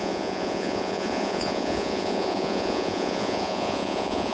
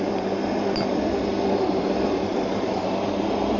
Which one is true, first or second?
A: second